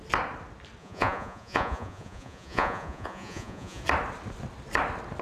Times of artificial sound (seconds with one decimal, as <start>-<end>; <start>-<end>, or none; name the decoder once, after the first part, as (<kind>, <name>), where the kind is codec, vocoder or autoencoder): 0.8-3.8 (vocoder, Vocos)